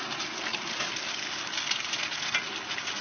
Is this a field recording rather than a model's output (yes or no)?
yes